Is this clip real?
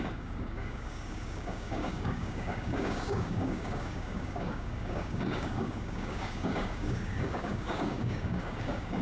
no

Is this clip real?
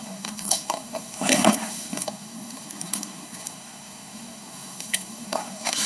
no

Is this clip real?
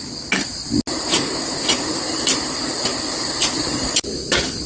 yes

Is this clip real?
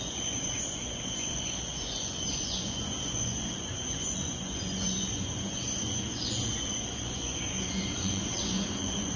no